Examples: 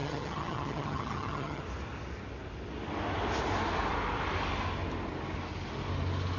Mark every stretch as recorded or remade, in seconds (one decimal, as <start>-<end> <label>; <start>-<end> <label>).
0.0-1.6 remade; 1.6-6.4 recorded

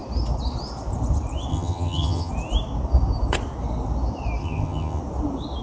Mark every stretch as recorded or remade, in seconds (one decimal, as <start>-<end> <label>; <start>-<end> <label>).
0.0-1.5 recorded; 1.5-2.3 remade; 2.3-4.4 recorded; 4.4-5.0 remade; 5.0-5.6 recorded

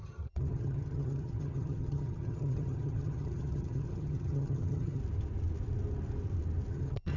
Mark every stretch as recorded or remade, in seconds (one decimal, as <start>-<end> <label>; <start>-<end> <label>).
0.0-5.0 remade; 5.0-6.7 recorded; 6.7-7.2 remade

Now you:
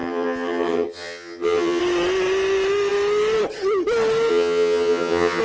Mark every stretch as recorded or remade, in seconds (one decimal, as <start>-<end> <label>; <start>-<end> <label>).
0.0-1.8 remade; 1.8-4.3 recorded; 4.3-5.4 remade